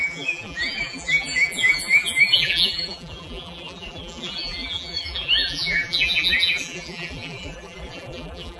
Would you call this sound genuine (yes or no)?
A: no